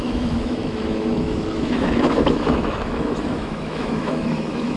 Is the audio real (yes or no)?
no